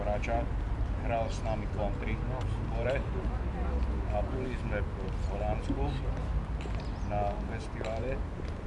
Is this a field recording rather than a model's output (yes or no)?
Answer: yes